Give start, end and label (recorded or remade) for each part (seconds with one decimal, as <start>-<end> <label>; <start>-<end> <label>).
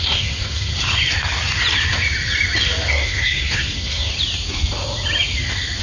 0.0-0.7 remade; 0.7-2.9 recorded; 2.9-4.1 remade; 4.1-5.8 recorded